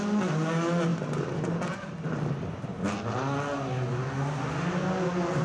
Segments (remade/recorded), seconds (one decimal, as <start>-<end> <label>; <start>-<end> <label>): 0.0-5.4 recorded